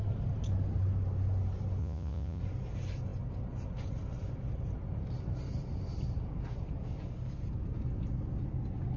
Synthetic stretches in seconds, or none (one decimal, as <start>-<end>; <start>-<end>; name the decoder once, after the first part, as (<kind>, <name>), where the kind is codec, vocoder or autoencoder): 1.8-2.4 (vocoder, Vocos)